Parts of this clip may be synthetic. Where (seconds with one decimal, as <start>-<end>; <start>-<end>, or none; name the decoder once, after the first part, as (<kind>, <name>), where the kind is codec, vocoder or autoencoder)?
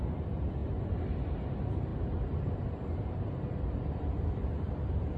0.6-1.4 (vocoder, BigVGAN v2); 1.9-5.2